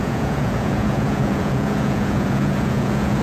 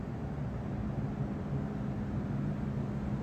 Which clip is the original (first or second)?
second